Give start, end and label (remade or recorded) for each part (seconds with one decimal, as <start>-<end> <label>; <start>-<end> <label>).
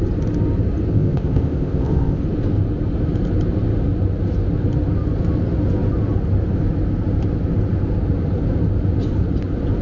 0.0-0.9 recorded; 0.9-2.2 remade; 2.2-9.8 recorded